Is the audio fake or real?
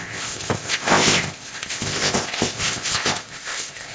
fake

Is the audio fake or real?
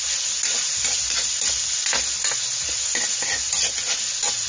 real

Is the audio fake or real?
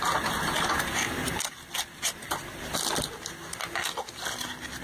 real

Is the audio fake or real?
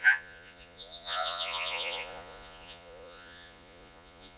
fake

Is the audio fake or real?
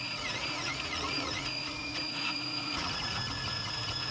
fake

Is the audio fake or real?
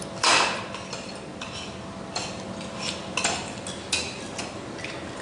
real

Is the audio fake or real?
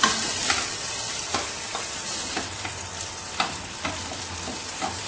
real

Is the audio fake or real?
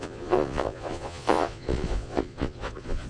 fake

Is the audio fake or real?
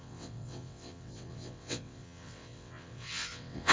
fake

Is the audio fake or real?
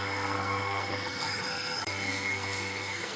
fake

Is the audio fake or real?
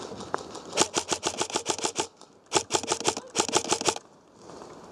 real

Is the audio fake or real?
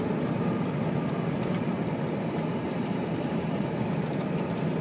real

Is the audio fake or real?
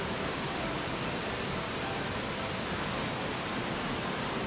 real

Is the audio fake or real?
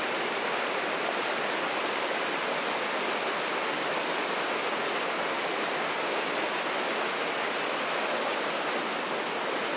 real